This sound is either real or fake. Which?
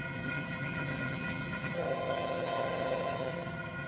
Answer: fake